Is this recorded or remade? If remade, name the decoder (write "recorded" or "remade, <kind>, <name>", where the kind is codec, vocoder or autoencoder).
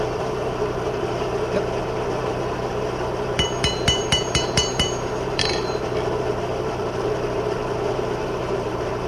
remade, vocoder, BigVGAN v2